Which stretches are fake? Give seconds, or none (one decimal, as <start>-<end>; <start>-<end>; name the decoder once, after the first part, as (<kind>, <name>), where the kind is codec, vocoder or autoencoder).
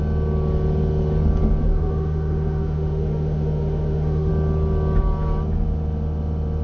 1.6-4.3 (autoencoder, DAC-VAE)